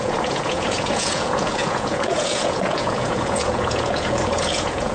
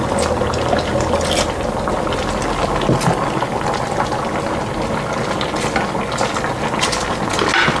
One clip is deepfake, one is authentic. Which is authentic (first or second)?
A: second